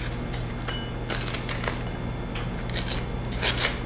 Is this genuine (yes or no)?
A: yes